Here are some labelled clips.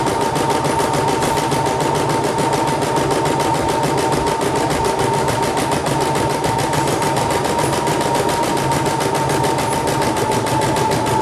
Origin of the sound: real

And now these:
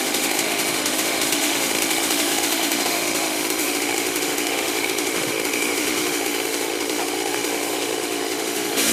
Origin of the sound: fake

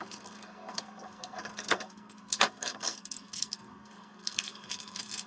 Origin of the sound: fake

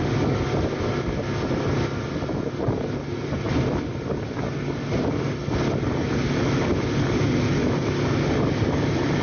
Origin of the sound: real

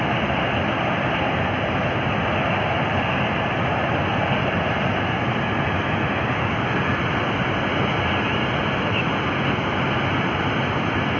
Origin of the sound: real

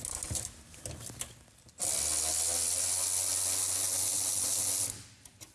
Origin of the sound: real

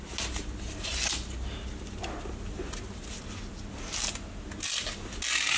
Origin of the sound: real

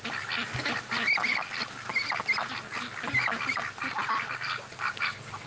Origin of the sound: real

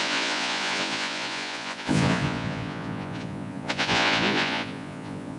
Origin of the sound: fake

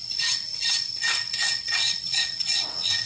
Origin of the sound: fake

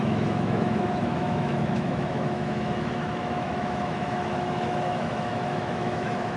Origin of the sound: fake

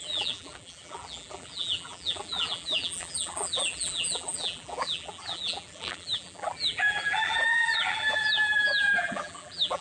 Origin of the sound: fake